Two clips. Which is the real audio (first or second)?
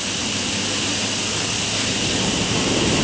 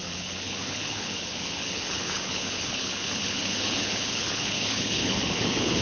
first